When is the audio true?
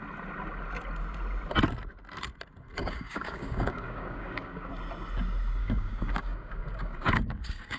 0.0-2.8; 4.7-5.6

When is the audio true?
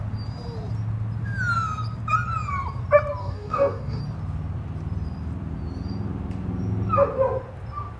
0.0-3.2; 4.0-8.0